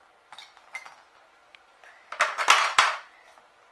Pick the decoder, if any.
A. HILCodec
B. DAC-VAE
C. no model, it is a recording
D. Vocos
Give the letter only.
C